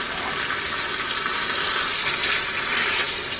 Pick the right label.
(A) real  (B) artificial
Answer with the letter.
A